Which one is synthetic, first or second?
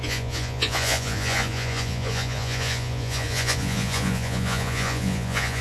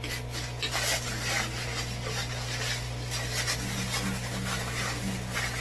first